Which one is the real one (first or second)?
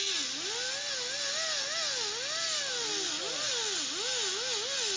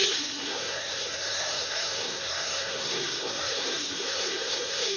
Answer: first